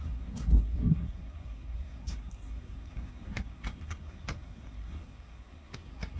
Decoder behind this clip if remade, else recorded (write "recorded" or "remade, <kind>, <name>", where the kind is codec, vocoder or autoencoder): remade, codec, SNAC